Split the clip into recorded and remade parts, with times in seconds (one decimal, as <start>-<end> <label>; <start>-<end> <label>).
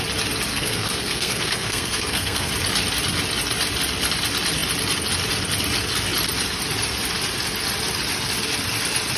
0.0-0.5 recorded; 0.5-2.5 remade; 2.5-9.2 recorded